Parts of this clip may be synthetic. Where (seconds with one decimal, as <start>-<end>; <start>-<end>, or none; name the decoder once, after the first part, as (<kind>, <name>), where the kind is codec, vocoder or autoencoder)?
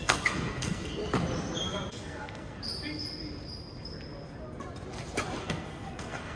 0.0-1.0 (codec, SNAC); 1.9-2.6; 5.4-6.4